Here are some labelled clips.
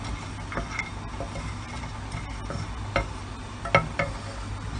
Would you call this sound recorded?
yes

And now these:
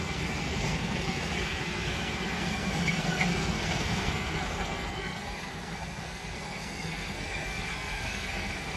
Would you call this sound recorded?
no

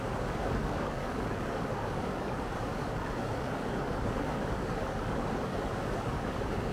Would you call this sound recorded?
no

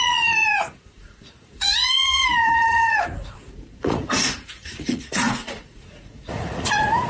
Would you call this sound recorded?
no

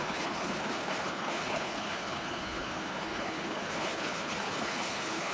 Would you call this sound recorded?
no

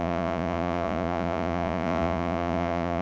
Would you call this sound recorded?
no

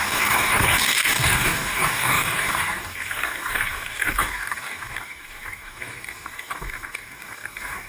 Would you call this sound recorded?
no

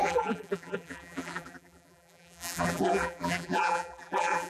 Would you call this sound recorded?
no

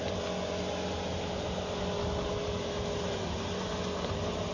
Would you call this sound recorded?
yes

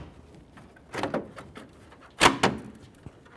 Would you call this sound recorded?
yes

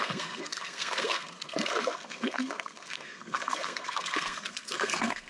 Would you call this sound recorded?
no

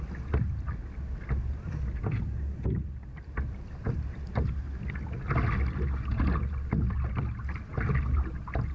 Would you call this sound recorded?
yes